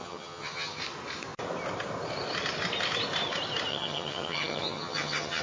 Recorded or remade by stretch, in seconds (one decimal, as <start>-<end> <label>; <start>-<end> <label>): 0.0-0.8 remade; 0.8-3.7 recorded; 3.7-5.4 remade